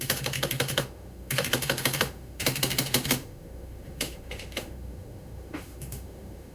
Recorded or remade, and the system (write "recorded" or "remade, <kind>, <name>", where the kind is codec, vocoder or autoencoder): remade, autoencoder, DAC-VAE